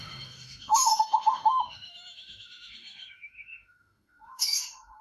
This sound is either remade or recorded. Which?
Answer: remade